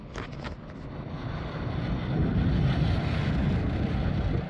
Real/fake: real